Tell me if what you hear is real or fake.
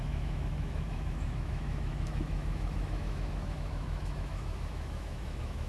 fake